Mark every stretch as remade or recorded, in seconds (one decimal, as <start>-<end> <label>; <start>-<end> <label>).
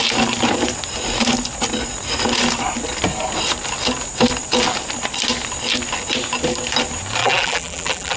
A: 0.0-7.2 recorded; 7.2-8.2 remade